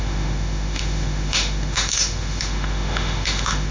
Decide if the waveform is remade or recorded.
remade